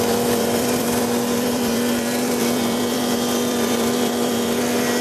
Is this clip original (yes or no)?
no